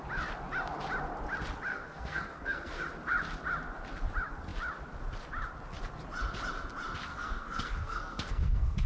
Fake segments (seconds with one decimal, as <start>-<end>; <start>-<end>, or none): 1.7-2.8; 7.1-8.9